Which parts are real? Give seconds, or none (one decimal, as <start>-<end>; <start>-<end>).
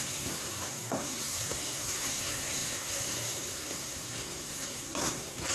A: none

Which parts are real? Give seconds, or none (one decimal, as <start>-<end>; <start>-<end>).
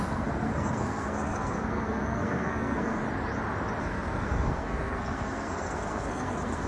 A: 3.0-3.8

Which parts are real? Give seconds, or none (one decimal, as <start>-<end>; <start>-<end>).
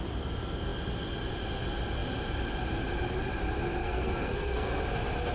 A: 0.0-3.8; 4.8-5.3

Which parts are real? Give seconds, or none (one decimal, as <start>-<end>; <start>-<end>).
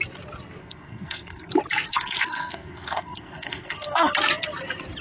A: 0.0-0.6; 1.5-1.9; 4.1-5.0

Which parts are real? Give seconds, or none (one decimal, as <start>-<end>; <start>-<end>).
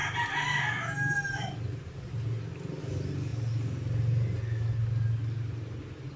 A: 0.0-6.2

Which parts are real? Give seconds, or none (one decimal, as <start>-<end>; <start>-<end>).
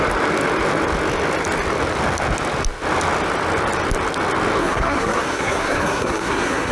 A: 0.0-4.6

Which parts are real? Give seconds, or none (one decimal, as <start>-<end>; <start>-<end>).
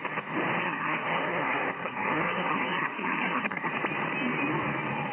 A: 0.0-0.6; 3.7-5.1